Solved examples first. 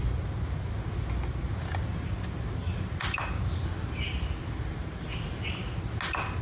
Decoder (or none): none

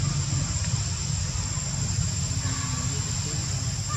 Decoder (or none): none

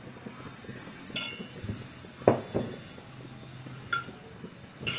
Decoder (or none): none